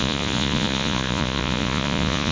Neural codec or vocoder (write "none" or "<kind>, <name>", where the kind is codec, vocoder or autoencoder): vocoder, Vocos